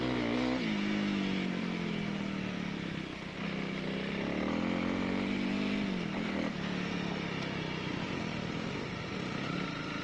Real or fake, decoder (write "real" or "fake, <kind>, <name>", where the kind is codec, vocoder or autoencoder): real